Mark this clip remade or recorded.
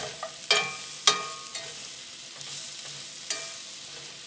recorded